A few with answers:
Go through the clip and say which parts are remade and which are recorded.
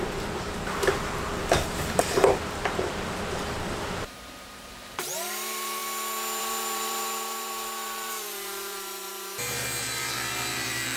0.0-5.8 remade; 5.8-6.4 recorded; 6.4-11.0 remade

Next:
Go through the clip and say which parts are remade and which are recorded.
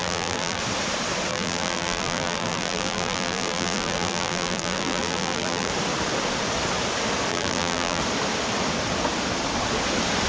0.0-0.6 remade; 0.6-1.3 recorded; 1.3-5.7 remade; 5.7-7.3 recorded; 7.3-8.0 remade; 8.0-10.3 recorded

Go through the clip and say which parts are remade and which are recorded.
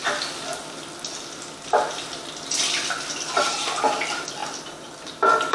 0.0-0.5 remade; 0.5-3.5 recorded; 3.5-4.4 remade; 4.4-5.1 recorded; 5.1-5.5 remade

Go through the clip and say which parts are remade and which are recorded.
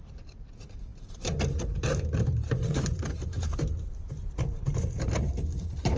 0.0-6.0 remade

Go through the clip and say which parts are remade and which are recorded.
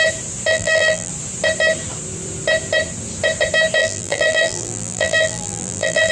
0.0-0.5 recorded; 0.5-1.1 remade; 1.1-3.8 recorded; 3.8-6.1 remade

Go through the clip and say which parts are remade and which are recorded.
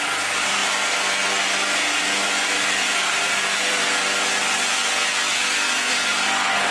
0.0-0.6 remade; 0.6-2.2 recorded; 2.2-4.3 remade; 4.3-5.9 recorded; 5.9-6.7 remade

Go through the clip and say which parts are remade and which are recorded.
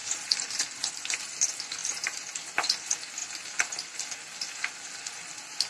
0.0-0.6 remade; 0.6-1.8 recorded; 1.8-2.3 remade; 2.3-3.2 recorded; 3.2-3.7 remade; 3.7-5.7 recorded